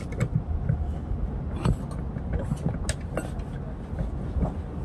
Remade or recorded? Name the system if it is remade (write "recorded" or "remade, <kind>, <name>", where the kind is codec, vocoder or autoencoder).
recorded